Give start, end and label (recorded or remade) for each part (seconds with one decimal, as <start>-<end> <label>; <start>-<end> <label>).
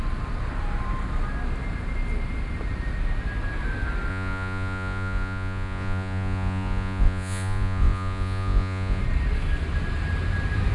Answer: 0.0-4.1 recorded; 4.1-9.0 remade; 9.0-10.7 recorded